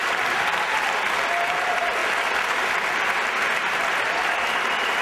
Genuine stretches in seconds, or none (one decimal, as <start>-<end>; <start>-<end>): 0.0-5.0